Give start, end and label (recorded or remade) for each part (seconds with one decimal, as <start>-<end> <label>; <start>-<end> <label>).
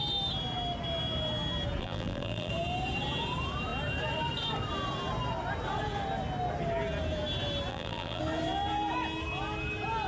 0.0-1.8 recorded; 1.8-2.5 remade; 2.5-7.7 recorded; 7.7-8.2 remade; 8.2-10.1 recorded